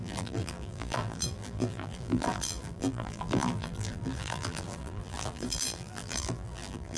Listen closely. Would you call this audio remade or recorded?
remade